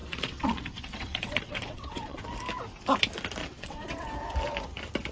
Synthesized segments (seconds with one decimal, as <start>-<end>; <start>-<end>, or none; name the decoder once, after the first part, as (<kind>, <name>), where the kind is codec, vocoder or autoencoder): 0.0-2.2 (vocoder, WaveNeXt); 3.4-4.1